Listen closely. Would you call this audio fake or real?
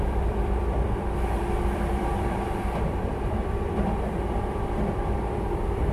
fake